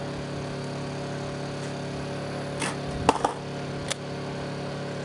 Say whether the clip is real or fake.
real